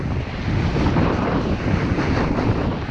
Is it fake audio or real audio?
real